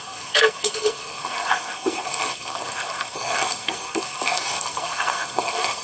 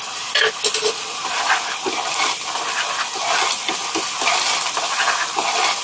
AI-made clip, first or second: first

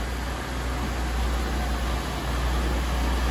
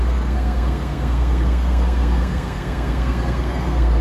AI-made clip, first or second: second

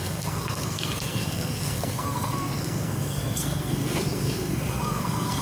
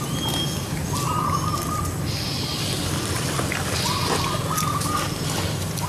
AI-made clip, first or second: first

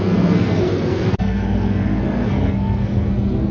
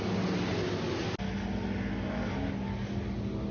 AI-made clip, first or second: first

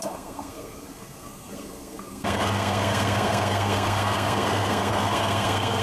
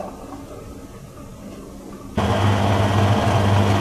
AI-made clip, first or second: first